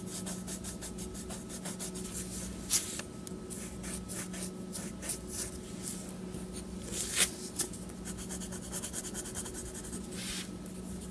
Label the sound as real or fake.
real